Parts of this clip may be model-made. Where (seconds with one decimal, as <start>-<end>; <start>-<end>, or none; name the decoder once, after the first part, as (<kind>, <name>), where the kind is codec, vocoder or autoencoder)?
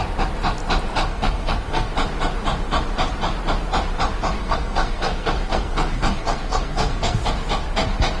1.1-1.9 (codec, SNAC); 4.4-7.2